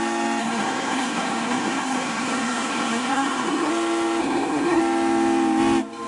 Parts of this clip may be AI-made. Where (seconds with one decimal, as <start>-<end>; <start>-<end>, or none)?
0.4-3.7; 4.2-4.8